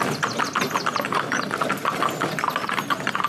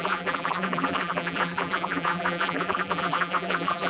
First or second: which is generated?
second